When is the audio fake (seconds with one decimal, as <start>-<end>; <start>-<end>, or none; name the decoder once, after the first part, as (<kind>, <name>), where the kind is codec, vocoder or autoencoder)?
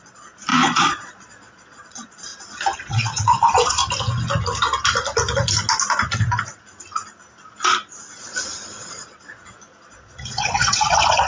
0.0-2.3 (vocoder, Vocos); 2.8-3.8; 8.8-11.3